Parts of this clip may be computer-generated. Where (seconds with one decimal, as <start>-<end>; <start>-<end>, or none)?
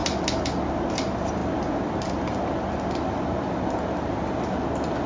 none